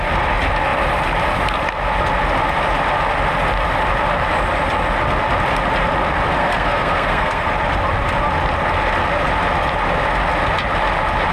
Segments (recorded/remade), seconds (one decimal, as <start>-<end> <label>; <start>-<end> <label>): 0.0-6.4 recorded; 6.4-7.5 remade; 7.5-11.3 recorded